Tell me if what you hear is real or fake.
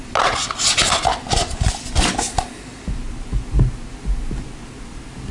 real